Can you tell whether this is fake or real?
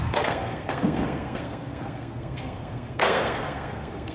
fake